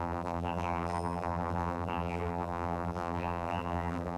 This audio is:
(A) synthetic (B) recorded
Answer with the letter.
A